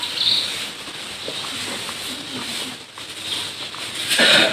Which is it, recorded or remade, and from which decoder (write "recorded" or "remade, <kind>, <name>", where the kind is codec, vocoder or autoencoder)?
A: recorded